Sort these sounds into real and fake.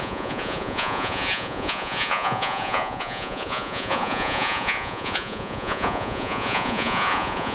fake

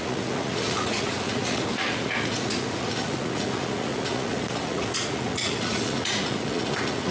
fake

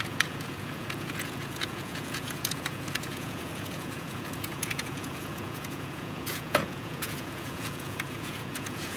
fake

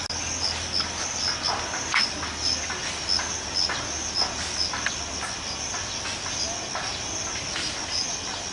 real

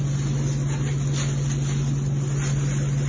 real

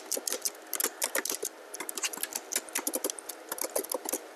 real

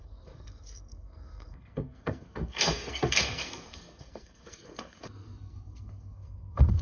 fake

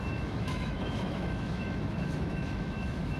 fake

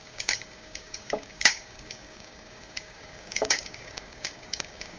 fake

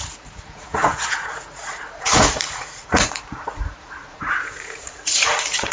fake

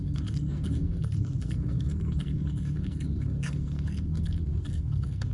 fake